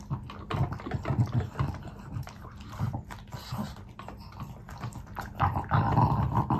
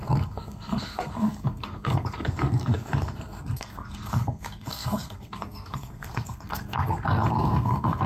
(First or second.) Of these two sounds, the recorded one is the first